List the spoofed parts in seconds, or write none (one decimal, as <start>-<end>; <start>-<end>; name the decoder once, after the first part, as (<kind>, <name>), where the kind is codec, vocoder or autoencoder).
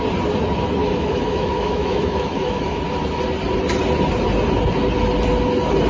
0.8-2.8 (autoencoder, DAC-VAE)